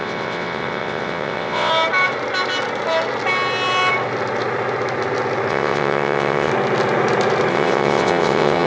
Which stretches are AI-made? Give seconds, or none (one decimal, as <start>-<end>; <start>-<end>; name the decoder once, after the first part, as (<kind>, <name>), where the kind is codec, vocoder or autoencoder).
0.0-1.7 (vocoder, WaveNeXt); 5.5-6.5; 7.5-8.7